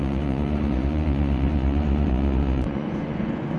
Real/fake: fake